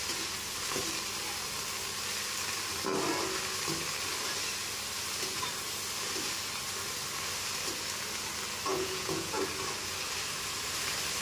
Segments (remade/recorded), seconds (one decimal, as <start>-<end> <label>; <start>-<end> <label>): 0.0-8.7 recorded; 8.7-9.4 remade; 9.4-11.2 recorded